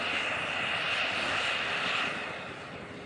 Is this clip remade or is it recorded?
recorded